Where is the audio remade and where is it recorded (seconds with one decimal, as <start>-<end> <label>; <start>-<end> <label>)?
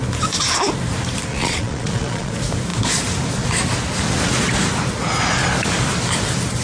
0.0-1.3 recorded; 1.3-2.3 remade; 2.3-6.6 recorded